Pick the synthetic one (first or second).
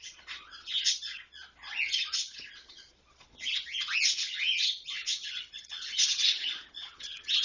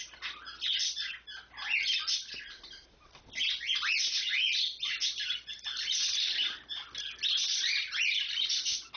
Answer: first